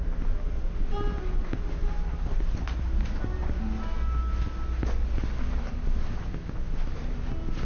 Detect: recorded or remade recorded